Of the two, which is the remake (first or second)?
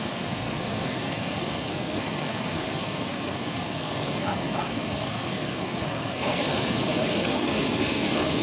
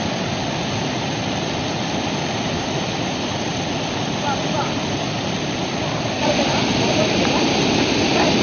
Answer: first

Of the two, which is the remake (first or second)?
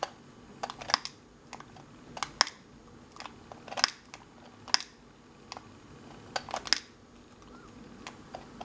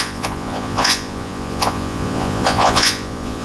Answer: second